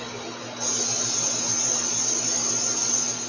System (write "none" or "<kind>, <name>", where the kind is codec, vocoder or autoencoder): none